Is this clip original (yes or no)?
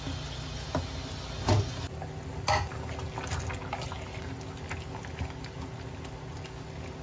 yes